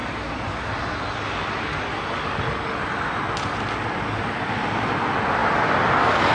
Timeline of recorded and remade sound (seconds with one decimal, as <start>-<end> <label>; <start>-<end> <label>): 0.0-6.3 recorded